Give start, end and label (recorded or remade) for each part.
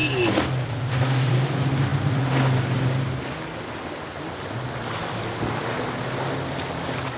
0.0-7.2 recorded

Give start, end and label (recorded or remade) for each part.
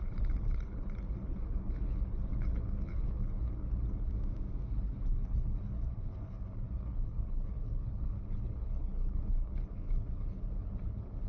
0.0-4.1 remade; 4.1-4.7 recorded; 4.7-11.3 remade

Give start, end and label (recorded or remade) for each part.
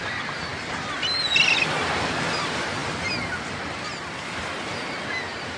0.0-5.6 recorded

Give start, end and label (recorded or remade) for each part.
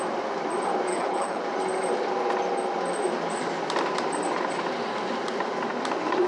0.0-0.9 recorded; 0.9-1.4 remade; 1.4-6.3 recorded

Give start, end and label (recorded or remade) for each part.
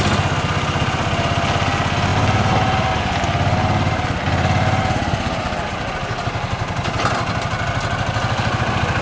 0.0-9.0 recorded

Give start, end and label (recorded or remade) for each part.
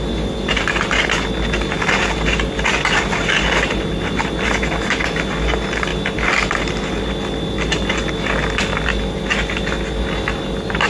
0.0-10.9 recorded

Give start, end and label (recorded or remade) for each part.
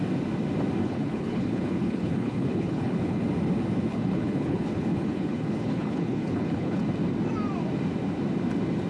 0.0-0.8 recorded; 0.8-3.2 remade; 3.2-3.9 recorded; 3.9-6.8 remade; 6.8-8.9 recorded